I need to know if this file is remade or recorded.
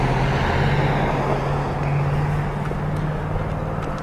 recorded